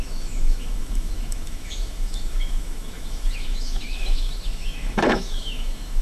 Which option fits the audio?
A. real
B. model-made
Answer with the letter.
B